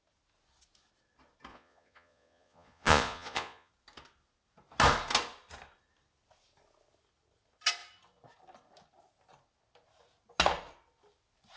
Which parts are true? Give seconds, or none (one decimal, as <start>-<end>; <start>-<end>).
0.0-1.5; 3.7-11.6